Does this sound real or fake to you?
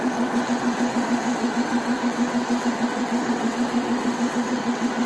fake